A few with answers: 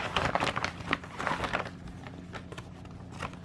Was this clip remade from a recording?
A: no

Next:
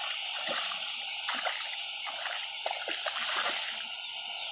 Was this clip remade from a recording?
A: no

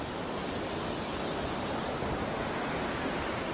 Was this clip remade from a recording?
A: no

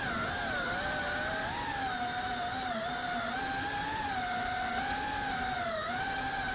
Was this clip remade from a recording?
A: no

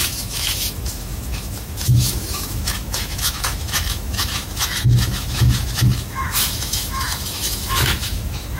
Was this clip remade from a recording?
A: yes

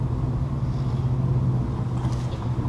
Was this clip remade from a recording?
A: no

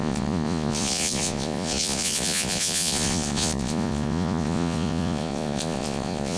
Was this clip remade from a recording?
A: yes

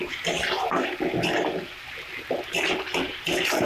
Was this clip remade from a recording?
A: no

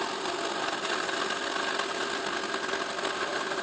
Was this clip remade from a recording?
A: no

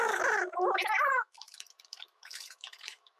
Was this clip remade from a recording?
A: yes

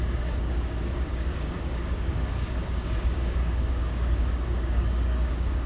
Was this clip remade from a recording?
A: yes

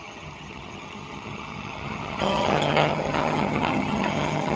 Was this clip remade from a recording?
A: yes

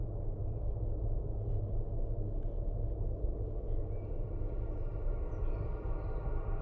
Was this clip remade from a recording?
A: no